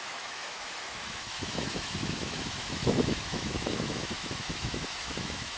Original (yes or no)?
no